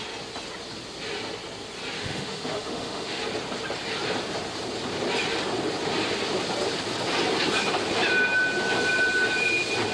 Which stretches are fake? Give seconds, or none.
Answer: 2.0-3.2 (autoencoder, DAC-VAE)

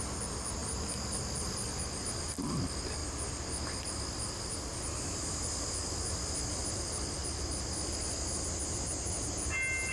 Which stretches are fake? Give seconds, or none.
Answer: 0.6-2.2 (vocoder, BigVGAN v2)